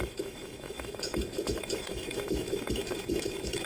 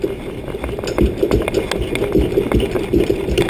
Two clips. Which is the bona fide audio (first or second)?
second